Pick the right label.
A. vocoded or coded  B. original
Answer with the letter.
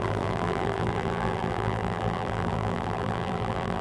A